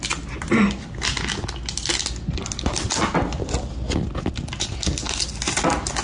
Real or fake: real